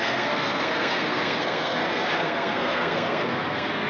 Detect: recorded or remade remade